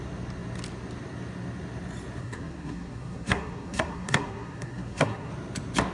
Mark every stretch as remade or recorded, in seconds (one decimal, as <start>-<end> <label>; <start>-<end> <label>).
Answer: 0.0-2.2 recorded; 2.2-5.3 remade; 5.3-5.9 recorded